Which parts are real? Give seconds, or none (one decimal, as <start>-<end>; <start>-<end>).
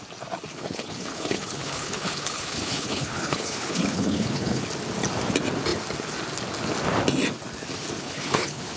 0.0-0.5; 4.6-8.0